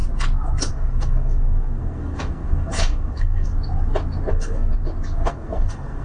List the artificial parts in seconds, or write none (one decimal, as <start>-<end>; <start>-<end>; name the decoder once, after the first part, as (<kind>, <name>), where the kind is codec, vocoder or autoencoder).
0.7-3.5 (codec, SNAC); 4.3-4.7; 5.3-6.0